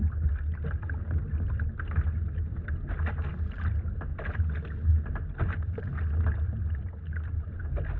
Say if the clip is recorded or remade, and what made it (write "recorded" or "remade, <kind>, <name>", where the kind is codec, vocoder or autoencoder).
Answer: recorded